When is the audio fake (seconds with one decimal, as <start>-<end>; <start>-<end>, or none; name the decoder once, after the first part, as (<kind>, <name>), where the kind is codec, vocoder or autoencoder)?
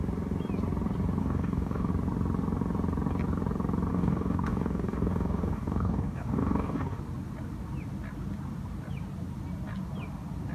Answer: 1.2-1.9 (codec, DAC); 3.9-7.0